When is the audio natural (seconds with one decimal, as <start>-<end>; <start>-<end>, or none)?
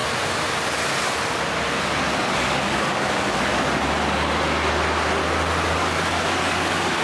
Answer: 0.0-1.8; 3.5-5.7